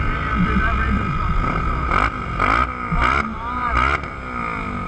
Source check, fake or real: real